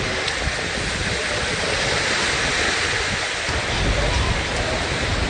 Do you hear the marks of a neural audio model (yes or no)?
no